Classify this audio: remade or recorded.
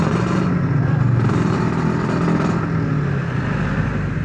recorded